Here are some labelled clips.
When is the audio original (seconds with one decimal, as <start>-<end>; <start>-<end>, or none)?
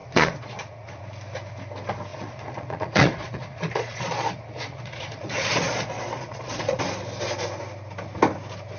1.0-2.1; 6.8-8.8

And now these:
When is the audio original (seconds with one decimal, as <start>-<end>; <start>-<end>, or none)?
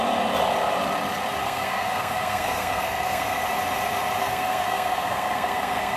0.0-1.4; 3.4-4.2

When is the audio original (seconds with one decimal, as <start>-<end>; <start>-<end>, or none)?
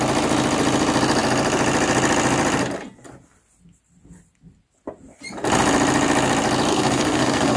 0.0-6.7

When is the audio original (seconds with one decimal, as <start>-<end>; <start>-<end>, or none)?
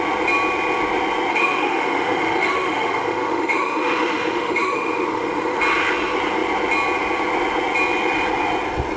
0.0-1.3; 5.6-9.0